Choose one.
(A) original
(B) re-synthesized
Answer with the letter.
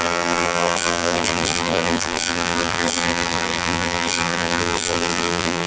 B